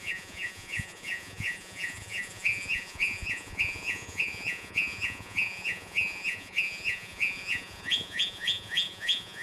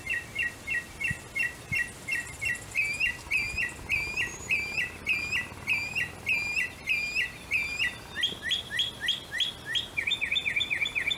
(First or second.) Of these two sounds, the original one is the second